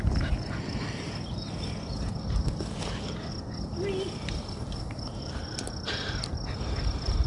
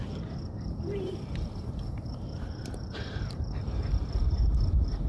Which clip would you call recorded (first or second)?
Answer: first